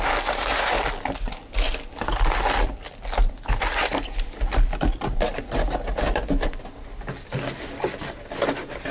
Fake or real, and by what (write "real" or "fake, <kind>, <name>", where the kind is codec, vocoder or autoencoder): real